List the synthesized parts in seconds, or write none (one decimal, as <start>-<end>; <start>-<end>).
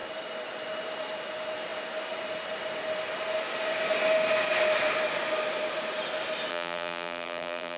6.5-7.8